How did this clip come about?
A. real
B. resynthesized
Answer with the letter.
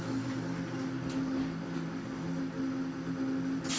A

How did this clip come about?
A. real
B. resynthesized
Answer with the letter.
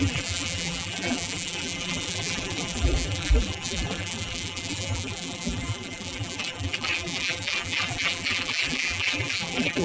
B